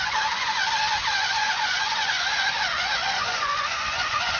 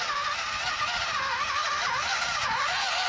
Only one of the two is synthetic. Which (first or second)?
first